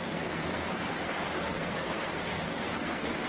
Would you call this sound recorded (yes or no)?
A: no